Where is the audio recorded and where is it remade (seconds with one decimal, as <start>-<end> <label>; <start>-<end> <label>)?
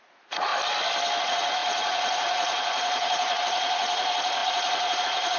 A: 0.0-0.5 remade; 0.5-1.2 recorded; 1.2-5.4 remade